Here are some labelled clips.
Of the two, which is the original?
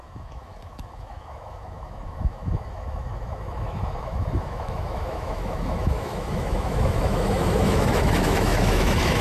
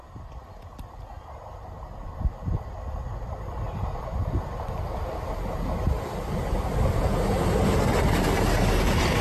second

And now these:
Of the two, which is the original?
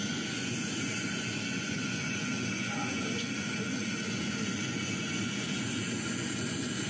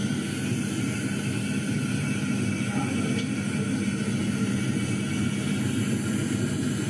second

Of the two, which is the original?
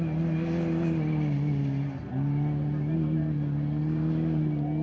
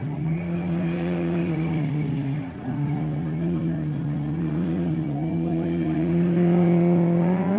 first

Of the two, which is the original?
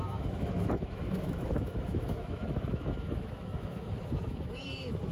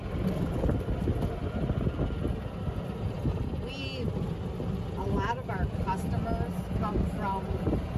second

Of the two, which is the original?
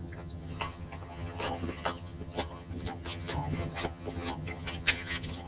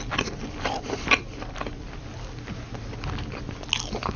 second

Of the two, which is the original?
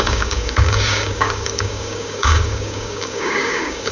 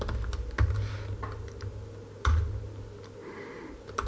second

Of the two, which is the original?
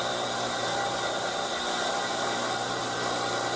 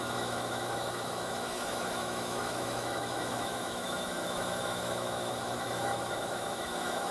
first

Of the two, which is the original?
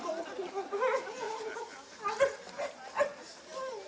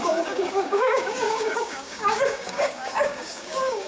first